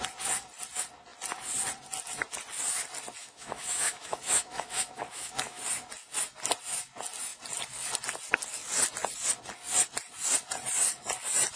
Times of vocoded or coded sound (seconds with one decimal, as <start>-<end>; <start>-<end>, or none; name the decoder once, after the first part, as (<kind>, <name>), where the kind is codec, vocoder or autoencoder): 3.2-5.6 (autoencoder, DAC-VAE)